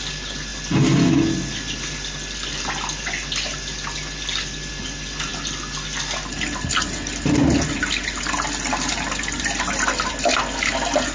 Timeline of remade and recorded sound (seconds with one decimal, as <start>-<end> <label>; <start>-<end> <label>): 0.0-11.1 recorded